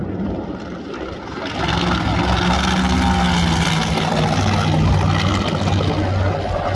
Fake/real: real